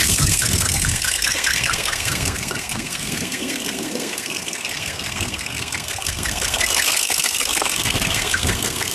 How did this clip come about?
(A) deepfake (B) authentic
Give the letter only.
A